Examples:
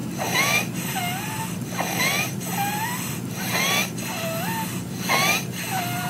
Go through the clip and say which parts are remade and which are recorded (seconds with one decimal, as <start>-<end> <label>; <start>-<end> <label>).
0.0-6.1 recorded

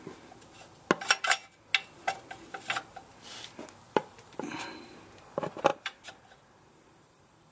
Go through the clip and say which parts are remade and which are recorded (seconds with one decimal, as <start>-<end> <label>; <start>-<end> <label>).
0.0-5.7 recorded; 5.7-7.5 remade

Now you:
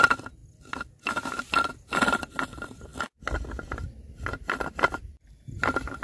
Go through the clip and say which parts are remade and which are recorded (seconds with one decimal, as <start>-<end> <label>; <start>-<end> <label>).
0.0-6.0 recorded

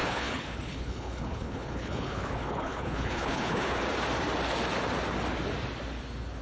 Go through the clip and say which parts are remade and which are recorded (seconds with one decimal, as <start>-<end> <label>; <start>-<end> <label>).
0.0-3.8 remade; 3.8-6.4 recorded

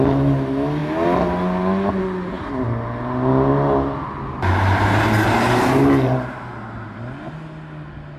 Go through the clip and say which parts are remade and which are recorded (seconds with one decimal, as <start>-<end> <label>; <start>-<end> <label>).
0.0-8.2 recorded

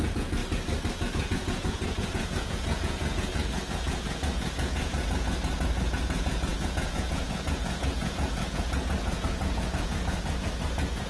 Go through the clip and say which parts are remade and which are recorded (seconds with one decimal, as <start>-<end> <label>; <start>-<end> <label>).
0.0-0.4 remade; 0.4-1.1 recorded; 1.1-11.1 remade

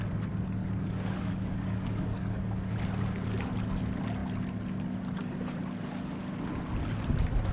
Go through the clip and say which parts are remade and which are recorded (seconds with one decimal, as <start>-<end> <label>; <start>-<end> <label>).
0.0-0.6 recorded; 0.6-2.4 remade; 2.4-7.5 recorded